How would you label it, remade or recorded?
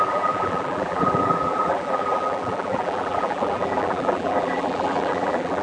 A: remade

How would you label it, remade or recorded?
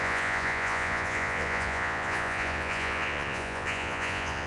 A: remade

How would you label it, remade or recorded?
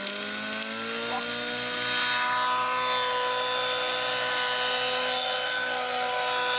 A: recorded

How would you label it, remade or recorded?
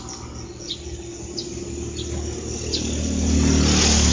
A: recorded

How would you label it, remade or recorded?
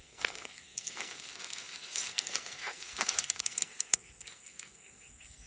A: remade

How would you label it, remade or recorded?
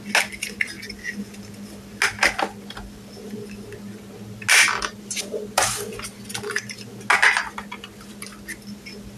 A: recorded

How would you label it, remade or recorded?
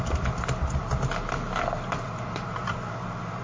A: recorded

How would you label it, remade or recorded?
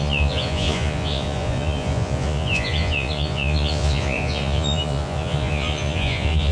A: remade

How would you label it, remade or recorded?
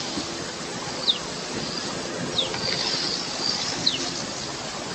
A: recorded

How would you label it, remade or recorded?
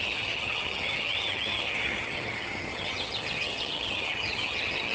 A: remade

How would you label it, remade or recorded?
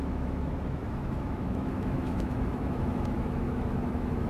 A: remade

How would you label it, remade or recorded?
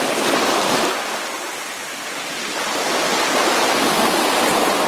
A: recorded